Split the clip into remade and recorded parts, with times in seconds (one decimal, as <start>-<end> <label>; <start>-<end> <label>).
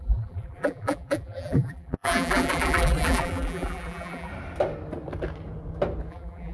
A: 0.0-4.3 remade; 4.3-6.1 recorded; 6.1-6.5 remade